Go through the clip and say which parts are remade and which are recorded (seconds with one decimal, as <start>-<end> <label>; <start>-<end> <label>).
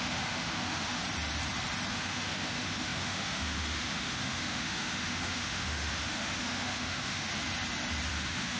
0.0-1.0 remade; 1.0-1.9 recorded; 1.9-7.3 remade; 7.3-8.1 recorded; 8.1-8.6 remade